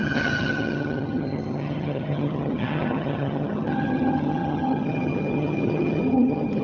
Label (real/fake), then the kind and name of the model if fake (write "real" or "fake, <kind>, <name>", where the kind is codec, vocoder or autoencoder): fake, vocoder, HiFi-GAN